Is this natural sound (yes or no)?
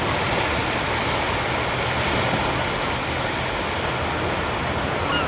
yes